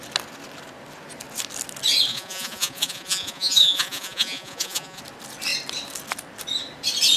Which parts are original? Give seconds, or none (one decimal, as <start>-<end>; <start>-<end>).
0.0-2.1; 5.0-7.2